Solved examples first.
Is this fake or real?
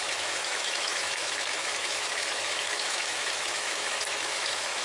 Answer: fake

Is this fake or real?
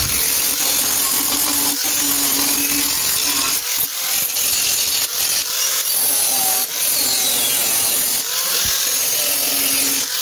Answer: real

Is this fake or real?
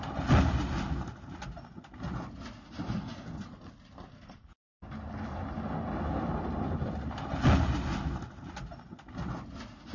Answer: real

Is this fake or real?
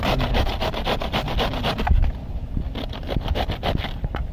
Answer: real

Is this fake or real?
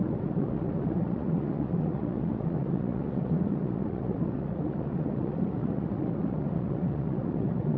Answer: fake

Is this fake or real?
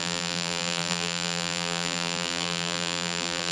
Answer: fake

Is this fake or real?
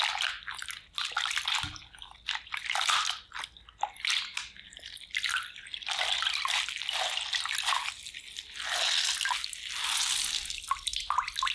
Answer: real